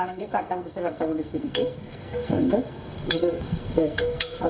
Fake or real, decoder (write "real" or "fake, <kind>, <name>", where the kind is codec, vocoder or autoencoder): fake, codec, SNAC